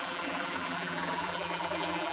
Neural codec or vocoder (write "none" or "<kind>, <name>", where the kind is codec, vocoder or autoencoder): vocoder, BigVGAN v2